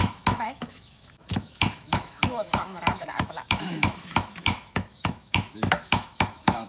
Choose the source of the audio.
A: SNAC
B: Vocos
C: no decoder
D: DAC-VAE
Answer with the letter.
D